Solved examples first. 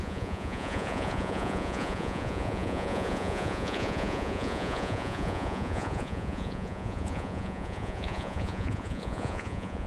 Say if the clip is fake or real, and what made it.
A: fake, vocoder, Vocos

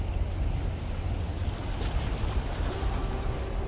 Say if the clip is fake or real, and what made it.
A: real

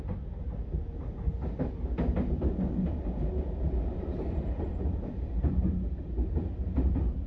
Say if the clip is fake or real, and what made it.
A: real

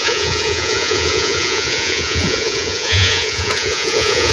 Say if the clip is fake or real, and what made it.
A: fake, vocoder, Vocos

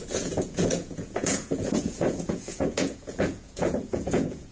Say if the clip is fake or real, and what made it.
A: fake, vocoder, Vocos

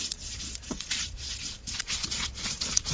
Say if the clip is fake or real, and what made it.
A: fake, vocoder, Vocos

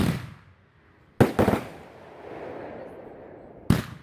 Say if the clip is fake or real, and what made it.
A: real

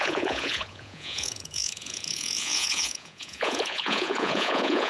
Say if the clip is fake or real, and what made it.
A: fake, vocoder, Vocos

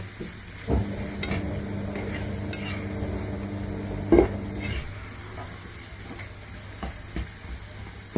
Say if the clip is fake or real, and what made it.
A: real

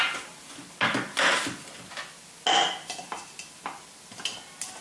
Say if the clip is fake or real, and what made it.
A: real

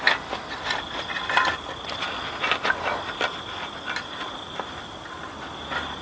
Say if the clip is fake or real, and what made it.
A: real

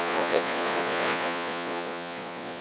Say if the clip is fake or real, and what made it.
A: fake, vocoder, Vocos